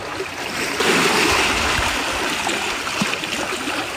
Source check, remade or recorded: recorded